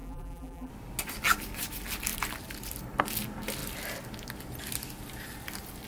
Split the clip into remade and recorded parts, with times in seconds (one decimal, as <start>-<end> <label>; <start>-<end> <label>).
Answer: 0.0-0.7 remade; 0.7-5.9 recorded